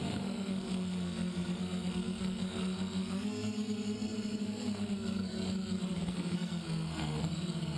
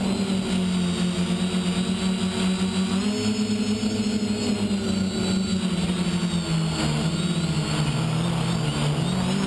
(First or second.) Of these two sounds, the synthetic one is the first